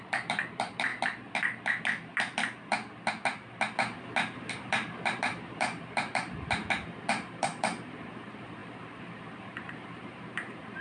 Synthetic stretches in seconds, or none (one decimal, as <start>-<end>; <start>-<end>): 0.0-0.9; 4.4-6.6; 7.1-10.8